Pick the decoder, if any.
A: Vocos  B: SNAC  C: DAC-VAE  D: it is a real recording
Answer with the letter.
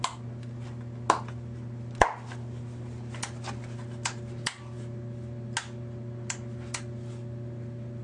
D